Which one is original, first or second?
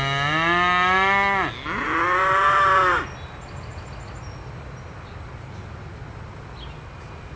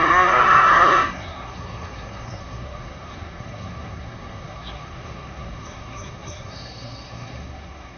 first